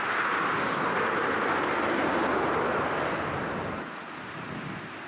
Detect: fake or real real